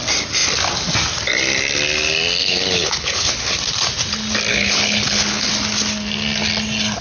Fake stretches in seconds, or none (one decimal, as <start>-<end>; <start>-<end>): 2.4-3.6; 4.5-5.5